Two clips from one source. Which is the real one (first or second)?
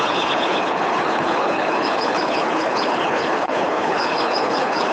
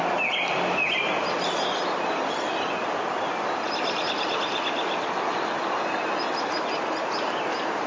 second